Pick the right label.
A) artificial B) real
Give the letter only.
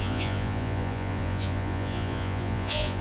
A